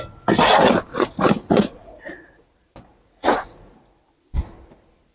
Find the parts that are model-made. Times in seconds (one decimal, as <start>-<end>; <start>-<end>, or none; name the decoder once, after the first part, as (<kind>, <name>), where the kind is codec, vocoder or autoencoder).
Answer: 0.9-4.0 (vocoder, Vocos)